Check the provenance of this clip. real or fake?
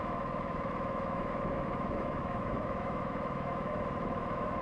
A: fake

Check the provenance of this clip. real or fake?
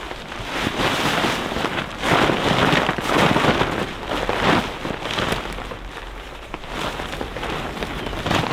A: real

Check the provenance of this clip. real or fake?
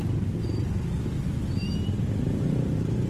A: real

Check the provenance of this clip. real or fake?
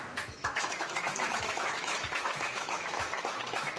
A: fake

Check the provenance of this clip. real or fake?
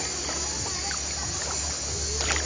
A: real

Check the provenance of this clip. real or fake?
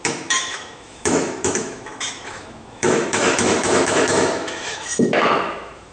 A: fake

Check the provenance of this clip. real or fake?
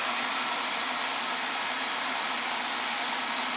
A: real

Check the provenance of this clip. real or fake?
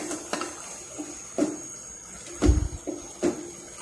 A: real